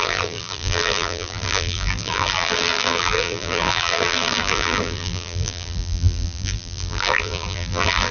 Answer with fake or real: fake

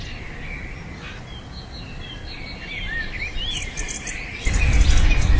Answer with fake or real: real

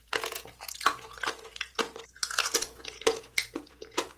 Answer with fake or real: fake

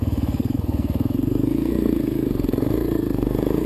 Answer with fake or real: fake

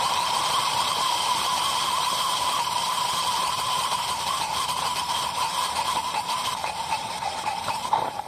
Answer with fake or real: fake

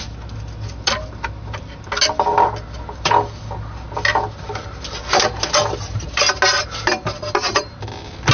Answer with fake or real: real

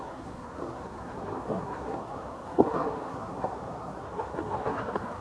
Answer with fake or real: fake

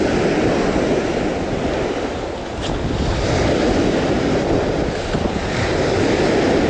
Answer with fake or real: fake